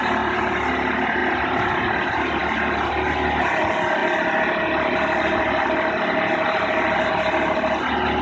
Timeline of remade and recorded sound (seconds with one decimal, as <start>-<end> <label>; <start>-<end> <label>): 0.0-8.2 recorded